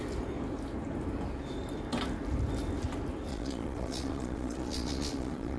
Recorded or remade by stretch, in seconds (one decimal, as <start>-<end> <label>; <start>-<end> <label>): 0.0-3.3 recorded; 3.3-5.6 remade